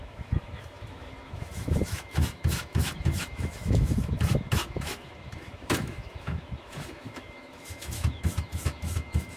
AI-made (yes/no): yes